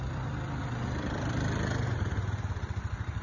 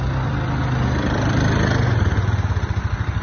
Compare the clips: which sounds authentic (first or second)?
second